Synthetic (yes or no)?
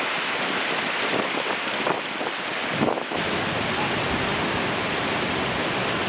no